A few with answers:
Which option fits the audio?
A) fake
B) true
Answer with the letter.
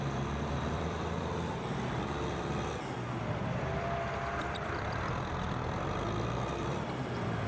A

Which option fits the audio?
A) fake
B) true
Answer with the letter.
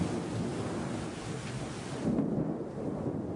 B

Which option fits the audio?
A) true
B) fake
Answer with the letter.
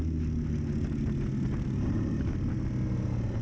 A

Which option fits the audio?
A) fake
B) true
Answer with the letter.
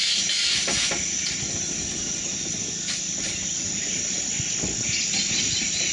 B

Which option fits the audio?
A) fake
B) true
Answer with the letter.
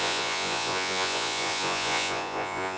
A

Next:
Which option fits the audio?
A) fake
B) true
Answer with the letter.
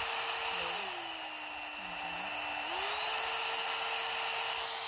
B